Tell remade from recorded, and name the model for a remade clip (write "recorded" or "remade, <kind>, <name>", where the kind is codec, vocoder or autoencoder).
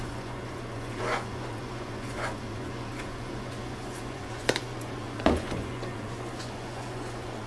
remade, vocoder, Vocos